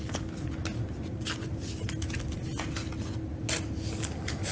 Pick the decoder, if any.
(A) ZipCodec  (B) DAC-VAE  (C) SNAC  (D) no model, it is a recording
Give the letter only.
D